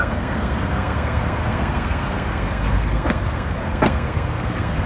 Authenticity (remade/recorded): remade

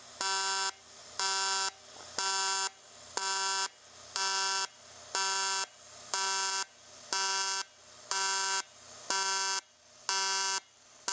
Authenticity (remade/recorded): recorded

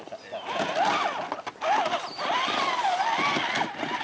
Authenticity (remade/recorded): recorded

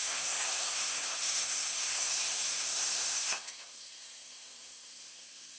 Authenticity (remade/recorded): remade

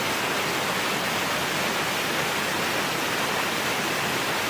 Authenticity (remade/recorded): recorded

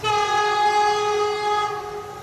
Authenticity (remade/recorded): recorded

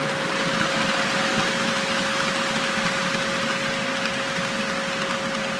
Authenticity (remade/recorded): recorded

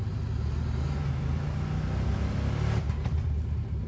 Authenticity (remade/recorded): recorded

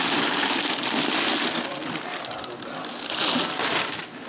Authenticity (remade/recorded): recorded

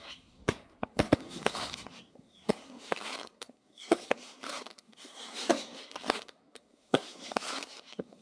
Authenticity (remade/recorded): remade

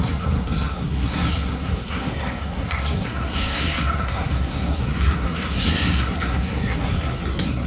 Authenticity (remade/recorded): remade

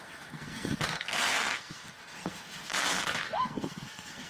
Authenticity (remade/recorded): remade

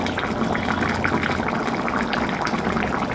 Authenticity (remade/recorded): recorded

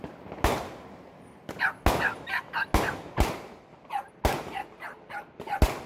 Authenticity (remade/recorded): recorded